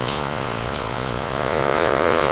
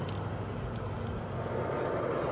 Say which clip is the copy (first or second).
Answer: first